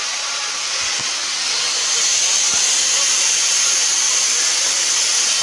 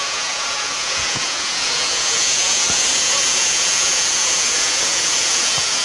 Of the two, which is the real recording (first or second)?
first